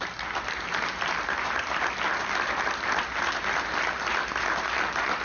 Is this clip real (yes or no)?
yes